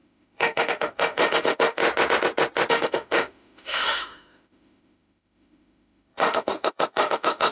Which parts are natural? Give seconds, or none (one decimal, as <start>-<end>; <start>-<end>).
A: 1.8-2.7

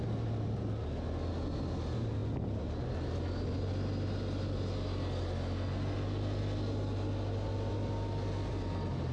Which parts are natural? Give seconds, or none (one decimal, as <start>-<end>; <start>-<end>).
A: 0.0-9.1

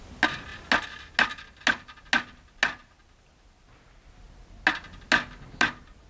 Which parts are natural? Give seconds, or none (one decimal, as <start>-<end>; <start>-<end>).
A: 0.0-6.1

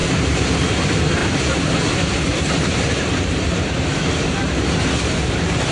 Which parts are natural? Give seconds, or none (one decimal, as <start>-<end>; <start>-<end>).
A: 0.0-1.2; 1.7-2.3